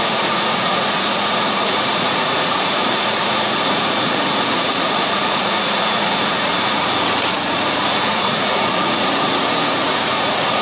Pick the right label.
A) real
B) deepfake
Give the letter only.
B